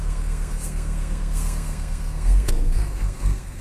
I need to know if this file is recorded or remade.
remade